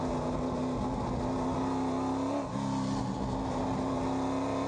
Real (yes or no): yes